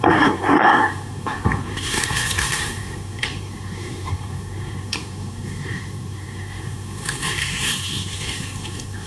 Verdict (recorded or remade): remade